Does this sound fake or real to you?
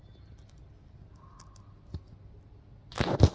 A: real